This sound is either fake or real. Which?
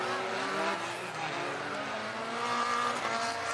real